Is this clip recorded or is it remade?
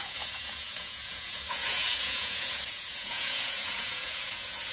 remade